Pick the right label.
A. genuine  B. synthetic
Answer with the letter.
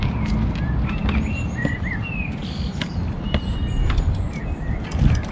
B